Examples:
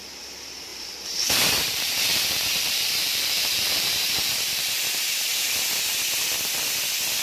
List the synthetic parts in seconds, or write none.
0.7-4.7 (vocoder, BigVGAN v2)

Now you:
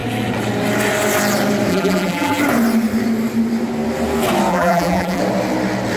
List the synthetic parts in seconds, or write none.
1.7-2.4 (vocoder, BigVGAN v2); 4.5-5.2

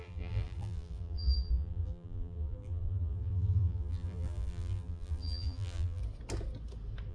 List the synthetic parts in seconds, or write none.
0.0-6.0 (vocoder, BigVGAN v2)

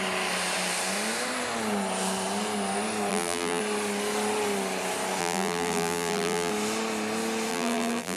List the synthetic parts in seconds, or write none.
3.1-3.6 (vocoder, BigVGAN v2); 5.2-6.5; 7.5-8.2

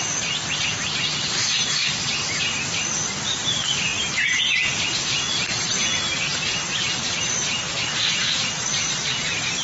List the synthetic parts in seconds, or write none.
none

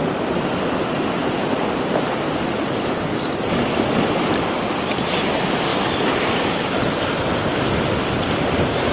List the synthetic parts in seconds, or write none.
none

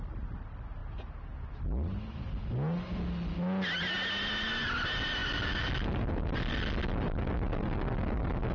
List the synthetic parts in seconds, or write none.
none

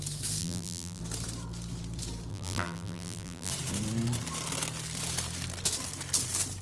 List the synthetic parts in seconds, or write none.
0.4-1.0 (vocoder, BigVGAN v2); 2.3-3.5